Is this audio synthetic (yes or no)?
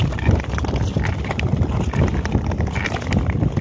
no